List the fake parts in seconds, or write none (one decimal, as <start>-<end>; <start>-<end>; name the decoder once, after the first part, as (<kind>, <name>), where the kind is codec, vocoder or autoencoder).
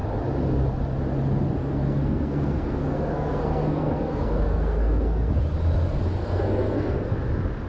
1.6-5.3 (codec, SNAC); 6.2-7.3